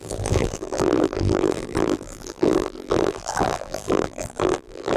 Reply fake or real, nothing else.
fake